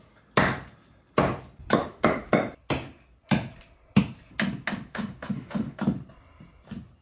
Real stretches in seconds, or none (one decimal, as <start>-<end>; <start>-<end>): 0.0-1.8; 2.3-4.9; 5.8-7.0